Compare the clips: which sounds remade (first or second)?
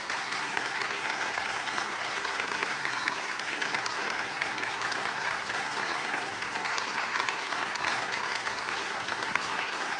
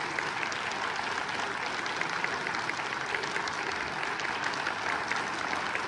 first